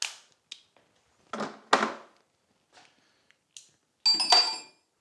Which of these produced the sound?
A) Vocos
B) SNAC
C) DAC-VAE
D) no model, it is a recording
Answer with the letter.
D